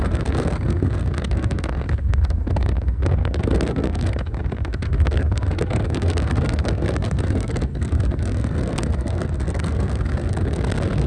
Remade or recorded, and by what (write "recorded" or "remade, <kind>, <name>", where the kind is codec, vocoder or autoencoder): remade, codec, SNAC